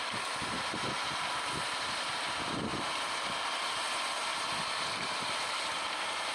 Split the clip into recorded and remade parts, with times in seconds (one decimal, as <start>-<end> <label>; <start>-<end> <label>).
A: 0.0-6.3 recorded